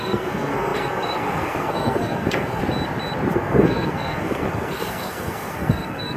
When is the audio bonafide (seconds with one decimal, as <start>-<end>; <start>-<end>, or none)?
2.6-3.3